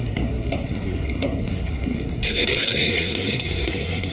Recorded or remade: remade